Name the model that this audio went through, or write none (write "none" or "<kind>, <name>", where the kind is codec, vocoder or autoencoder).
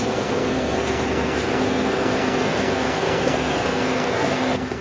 codec, SNAC